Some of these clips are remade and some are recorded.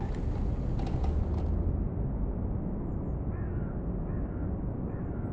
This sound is recorded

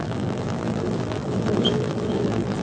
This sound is remade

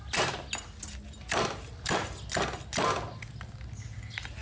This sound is recorded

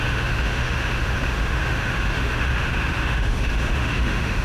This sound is remade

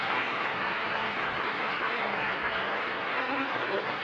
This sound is remade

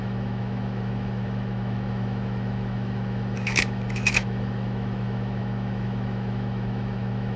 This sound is remade